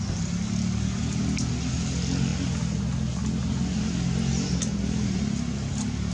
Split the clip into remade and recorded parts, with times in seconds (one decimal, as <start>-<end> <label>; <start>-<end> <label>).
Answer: 0.0-6.1 recorded